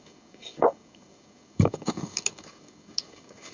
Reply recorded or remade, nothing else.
remade